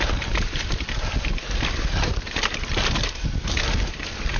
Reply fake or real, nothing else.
real